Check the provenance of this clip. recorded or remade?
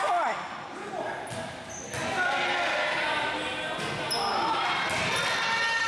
recorded